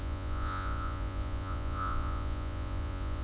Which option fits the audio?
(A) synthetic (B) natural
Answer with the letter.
A